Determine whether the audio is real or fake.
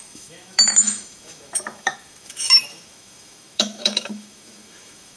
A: fake